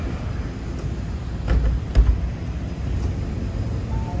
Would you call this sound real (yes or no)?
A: yes